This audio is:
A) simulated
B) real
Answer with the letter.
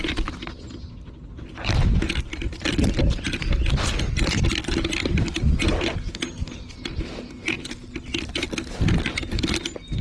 B